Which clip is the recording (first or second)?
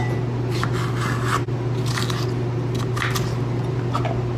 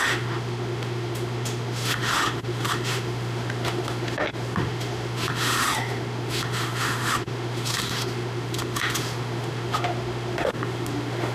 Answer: first